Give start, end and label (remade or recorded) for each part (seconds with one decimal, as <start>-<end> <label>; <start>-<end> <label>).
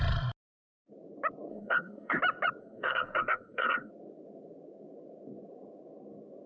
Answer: 0.0-1.5 recorded; 1.5-2.2 remade; 2.2-2.6 recorded; 2.6-3.9 remade; 3.9-6.5 recorded